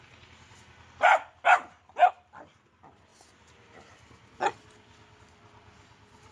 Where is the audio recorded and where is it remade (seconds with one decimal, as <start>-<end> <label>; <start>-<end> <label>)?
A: 0.0-6.3 recorded